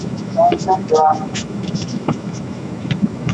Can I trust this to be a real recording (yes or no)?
no